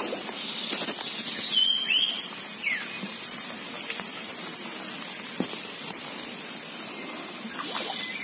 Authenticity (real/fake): real